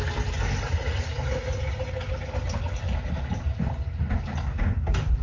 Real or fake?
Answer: real